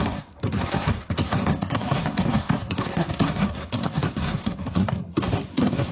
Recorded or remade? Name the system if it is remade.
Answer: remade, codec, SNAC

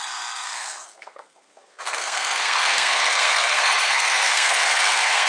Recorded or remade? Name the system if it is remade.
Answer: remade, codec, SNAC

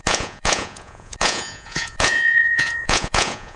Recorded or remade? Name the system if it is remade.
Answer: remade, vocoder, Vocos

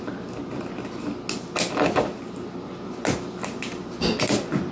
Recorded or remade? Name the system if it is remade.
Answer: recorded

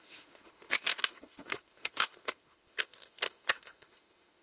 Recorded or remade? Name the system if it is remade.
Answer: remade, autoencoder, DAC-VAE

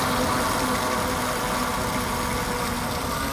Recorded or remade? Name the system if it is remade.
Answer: recorded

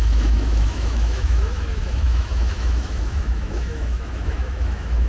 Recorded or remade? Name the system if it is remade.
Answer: remade, autoencoder, DAC-VAE